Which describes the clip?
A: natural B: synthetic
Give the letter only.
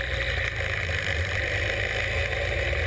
A